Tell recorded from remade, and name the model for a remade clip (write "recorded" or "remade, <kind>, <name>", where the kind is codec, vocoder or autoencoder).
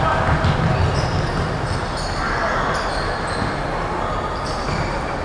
recorded